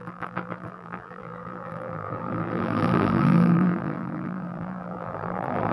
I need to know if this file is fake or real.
fake